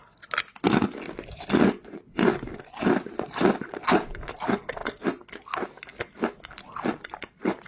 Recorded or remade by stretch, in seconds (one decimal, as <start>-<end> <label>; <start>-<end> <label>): 0.0-7.7 recorded